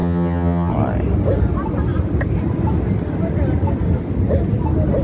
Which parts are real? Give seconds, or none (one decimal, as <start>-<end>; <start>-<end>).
0.7-5.0